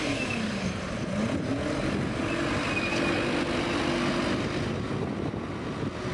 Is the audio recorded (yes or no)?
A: yes